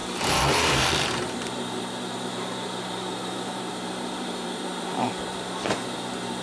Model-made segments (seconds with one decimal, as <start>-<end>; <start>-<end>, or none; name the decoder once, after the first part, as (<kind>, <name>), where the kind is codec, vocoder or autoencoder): 0.0-6.4 (vocoder, BigVGAN v2)